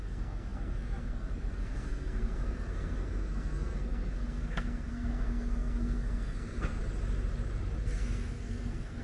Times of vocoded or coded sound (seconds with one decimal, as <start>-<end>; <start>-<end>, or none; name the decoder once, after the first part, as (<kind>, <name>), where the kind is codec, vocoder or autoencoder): 0.0-6.8 (codec, SNAC); 7.8-9.0